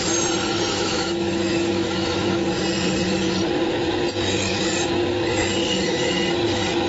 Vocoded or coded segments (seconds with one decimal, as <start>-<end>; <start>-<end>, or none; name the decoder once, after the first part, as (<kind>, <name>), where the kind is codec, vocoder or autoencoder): 0.7-2.3 (autoencoder, DAC-VAE)